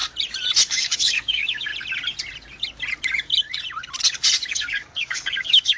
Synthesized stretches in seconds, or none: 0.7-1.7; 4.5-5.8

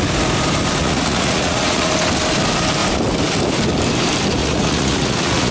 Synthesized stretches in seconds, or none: 0.8-1.9; 4.4-5.5

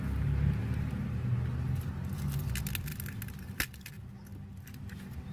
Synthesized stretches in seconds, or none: 0.6-1.3

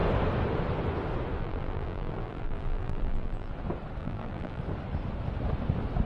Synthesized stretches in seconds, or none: 1.4-3.5; 4.0-4.6

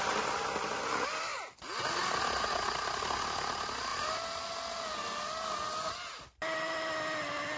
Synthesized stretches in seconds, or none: none

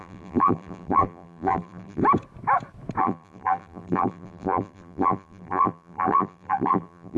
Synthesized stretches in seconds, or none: 0.0-2.0; 3.0-7.2